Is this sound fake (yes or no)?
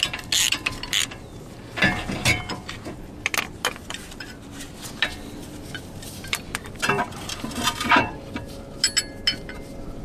no